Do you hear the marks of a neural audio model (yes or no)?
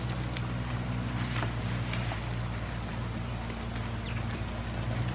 no